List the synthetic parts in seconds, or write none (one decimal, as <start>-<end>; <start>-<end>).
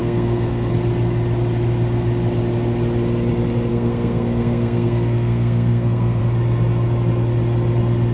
0.0-0.7; 3.7-6.2